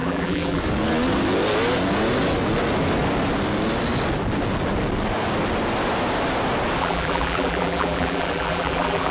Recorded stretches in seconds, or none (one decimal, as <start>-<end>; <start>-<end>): 0.6-6.8